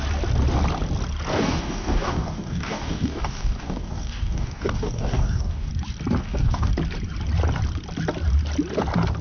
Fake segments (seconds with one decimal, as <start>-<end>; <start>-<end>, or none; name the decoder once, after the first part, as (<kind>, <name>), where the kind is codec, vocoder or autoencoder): 1.3-5.7 (codec, DAC); 6.2-6.7